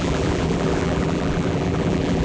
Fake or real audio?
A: fake